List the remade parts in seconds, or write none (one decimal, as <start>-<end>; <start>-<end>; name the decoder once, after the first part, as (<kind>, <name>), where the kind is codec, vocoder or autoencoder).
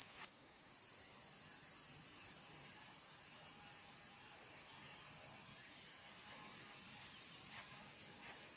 0.0-0.7 (autoencoder, DAC-VAE)